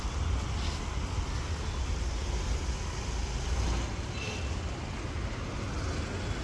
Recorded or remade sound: recorded